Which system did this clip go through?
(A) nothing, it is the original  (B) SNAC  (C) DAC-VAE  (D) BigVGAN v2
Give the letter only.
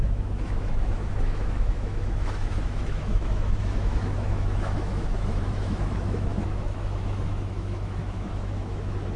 C